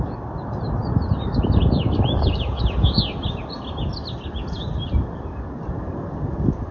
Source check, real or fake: real